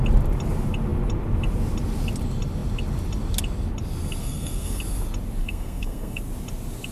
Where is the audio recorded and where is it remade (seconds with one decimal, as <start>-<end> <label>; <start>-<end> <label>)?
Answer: 0.0-4.2 recorded; 4.2-4.8 remade; 4.8-5.4 recorded; 5.4-6.2 remade; 6.2-6.9 recorded